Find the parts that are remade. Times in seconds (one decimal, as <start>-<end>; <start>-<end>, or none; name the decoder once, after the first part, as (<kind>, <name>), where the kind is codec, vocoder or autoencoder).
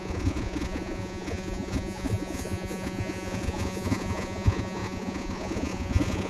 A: 0.0-6.3 (vocoder, Vocos)